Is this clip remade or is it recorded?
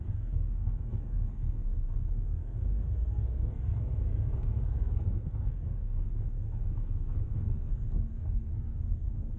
remade